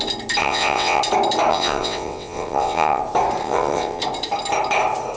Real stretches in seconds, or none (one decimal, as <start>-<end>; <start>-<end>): 0.0-0.4; 1.0-1.5; 3.0-3.4; 4.0-5.2

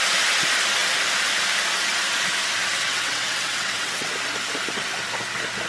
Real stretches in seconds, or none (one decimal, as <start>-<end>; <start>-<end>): 0.0-2.8; 4.1-5.7

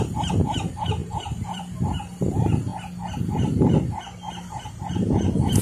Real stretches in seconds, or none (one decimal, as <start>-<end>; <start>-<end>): 0.0-1.0; 1.6-5.6

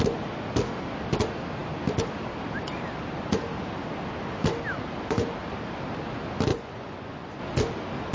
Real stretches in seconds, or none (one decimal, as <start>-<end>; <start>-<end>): 0.0-6.5; 7.4-8.1

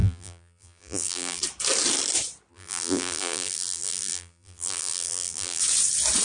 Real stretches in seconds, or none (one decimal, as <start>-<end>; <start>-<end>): 1.4-2.5; 5.6-6.2

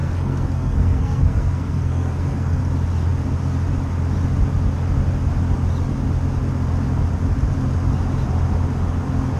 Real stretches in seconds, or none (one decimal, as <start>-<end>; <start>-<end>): 2.6-9.4